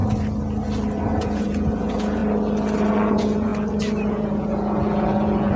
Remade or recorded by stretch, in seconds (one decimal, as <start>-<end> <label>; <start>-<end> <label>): 0.0-1.0 recorded; 1.0-2.2 remade; 2.2-3.1 recorded; 3.1-3.5 remade; 3.5-4.1 recorded; 4.1-5.6 remade